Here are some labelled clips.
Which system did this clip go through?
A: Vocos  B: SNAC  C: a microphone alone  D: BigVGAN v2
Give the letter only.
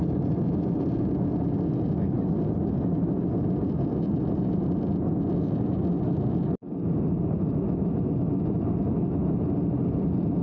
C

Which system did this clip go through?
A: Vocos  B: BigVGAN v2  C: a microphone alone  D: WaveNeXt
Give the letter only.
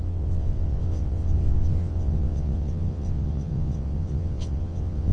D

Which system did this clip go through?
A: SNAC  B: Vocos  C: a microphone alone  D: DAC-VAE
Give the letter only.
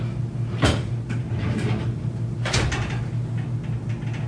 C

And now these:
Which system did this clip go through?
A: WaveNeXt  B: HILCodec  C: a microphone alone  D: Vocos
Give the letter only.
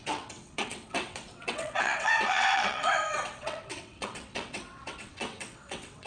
A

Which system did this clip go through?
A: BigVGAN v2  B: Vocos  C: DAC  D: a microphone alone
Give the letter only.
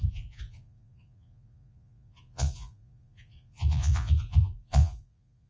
B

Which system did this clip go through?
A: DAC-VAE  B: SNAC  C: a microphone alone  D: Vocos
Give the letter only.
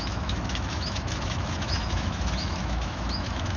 A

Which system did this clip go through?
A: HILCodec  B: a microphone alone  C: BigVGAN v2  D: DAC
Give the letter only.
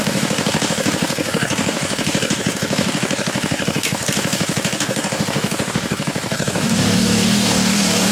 D